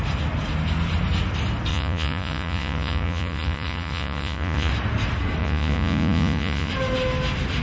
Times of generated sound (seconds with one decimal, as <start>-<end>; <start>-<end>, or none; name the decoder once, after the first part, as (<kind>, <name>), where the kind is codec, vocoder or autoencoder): 1.7-4.7 (vocoder, Vocos); 5.4-6.7